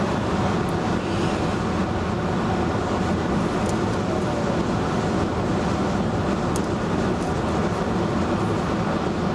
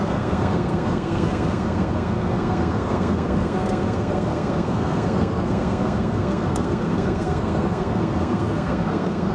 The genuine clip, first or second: first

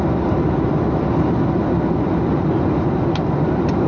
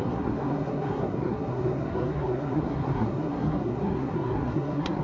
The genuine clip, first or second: first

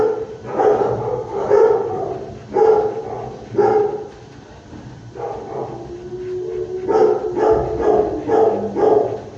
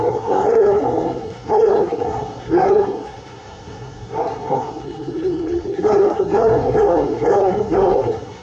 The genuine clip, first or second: first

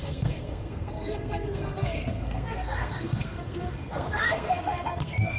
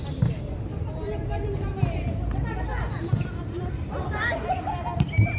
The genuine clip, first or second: second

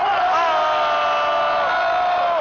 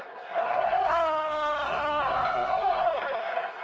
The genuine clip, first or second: first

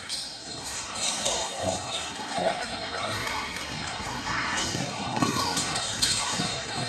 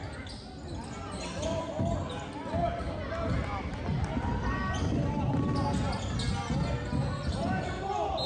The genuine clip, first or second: second